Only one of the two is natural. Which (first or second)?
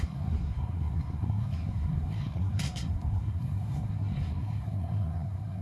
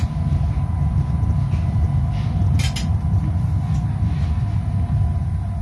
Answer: second